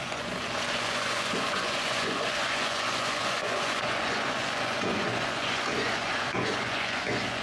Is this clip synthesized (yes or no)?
yes